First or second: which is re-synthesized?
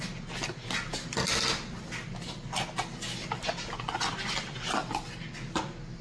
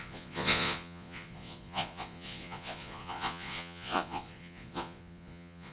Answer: second